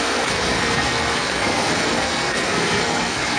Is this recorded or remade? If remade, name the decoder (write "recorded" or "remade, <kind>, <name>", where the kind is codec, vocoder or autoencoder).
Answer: remade, codec, SNAC